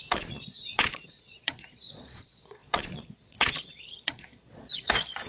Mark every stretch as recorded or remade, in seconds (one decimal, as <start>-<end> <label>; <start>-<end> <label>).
0.0-5.3 remade